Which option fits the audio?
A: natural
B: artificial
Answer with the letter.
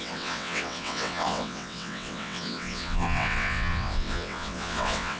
B